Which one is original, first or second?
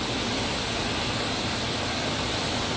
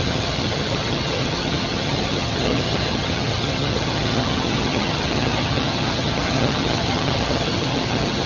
first